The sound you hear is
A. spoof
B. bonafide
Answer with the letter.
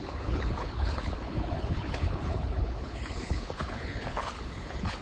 A